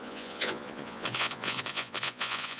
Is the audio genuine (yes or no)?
no